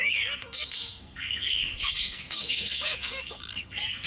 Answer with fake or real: fake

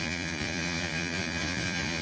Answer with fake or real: fake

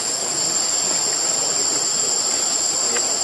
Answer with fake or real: real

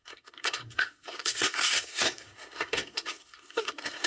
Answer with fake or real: fake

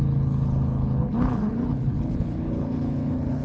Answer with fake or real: fake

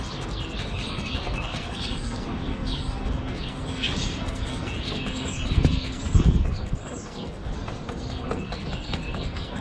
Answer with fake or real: fake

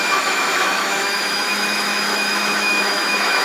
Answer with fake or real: fake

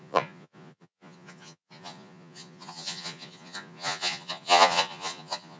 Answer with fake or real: fake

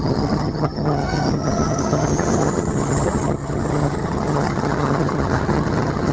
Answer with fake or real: fake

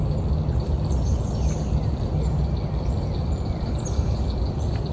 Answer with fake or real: real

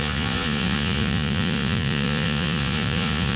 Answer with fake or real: fake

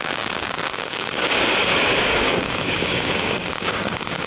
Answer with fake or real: fake